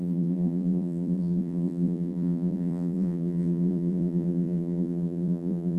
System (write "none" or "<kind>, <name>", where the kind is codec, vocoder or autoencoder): vocoder, BigVGAN v2